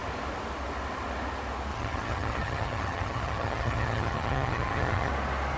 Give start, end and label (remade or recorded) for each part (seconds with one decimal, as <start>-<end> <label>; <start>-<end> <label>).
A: 0.0-1.7 recorded; 1.7-5.1 remade; 5.1-5.6 recorded